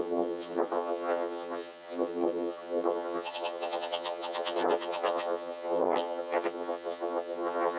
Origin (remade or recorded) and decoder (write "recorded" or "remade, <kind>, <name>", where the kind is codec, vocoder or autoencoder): remade, vocoder, HiFi-GAN